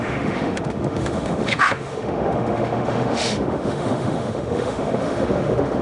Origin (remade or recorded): remade